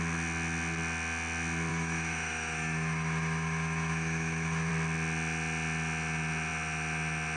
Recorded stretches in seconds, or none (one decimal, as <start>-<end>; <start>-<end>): 0.0-1.7; 4.7-7.4